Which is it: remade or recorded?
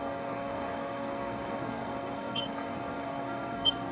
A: remade